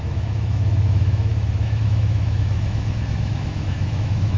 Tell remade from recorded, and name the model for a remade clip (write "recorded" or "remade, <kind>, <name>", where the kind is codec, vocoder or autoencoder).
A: remade, autoencoder, DAC-VAE